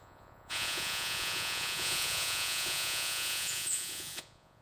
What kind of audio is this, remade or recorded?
remade